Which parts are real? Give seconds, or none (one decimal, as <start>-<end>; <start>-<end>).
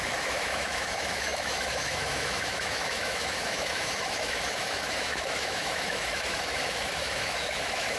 none